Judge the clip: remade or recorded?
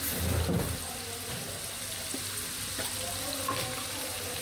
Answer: recorded